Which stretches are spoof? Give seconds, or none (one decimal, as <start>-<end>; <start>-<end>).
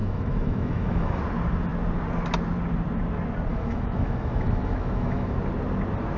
0.0-1.2; 3.5-5.4